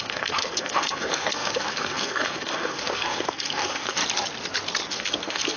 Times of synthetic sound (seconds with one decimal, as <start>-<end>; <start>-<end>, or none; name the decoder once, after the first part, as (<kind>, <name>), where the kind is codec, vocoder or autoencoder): 0.0-4.0 (codec, SNAC); 4.9-5.6